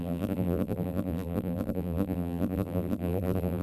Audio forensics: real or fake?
fake